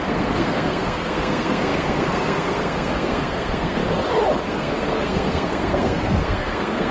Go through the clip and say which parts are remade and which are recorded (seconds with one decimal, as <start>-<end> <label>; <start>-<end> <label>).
0.0-3.8 remade; 3.8-4.5 recorded; 4.5-6.9 remade